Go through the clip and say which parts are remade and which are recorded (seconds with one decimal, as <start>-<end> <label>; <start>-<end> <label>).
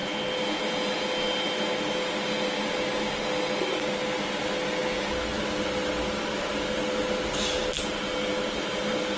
0.0-9.2 recorded